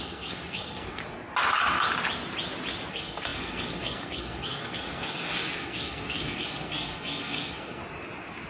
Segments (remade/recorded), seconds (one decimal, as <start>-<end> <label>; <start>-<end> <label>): 0.0-1.0 remade; 1.0-2.9 recorded; 2.9-7.8 remade; 7.8-8.5 recorded